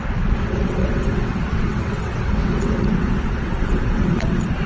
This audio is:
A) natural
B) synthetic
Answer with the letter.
B